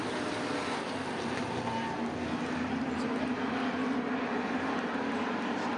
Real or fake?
real